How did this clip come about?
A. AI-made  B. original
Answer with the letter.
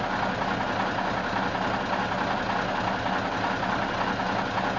B